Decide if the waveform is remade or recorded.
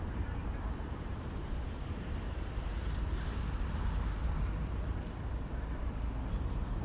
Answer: remade